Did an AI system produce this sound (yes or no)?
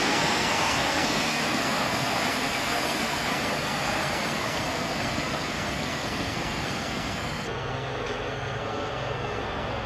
yes